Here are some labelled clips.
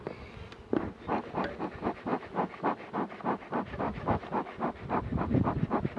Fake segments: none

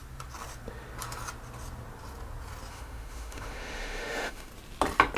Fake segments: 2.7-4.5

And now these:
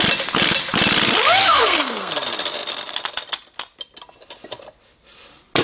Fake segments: 1.4-2.1

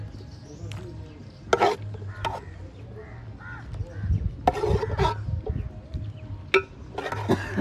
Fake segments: none

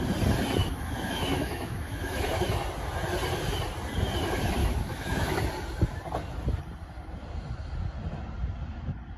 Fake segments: 0.6-2.5; 4.6-5.4

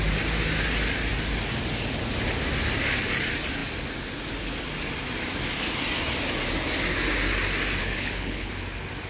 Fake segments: 7.8-8.5